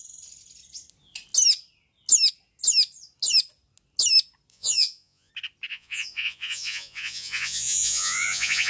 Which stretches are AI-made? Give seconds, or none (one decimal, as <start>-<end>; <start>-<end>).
4.5-5.3; 5.7-8.7